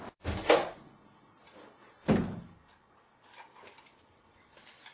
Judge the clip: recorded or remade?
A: recorded